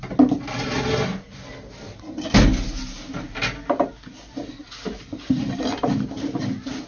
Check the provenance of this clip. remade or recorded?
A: recorded